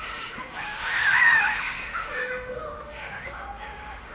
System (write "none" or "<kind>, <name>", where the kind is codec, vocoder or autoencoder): autoencoder, DAC-VAE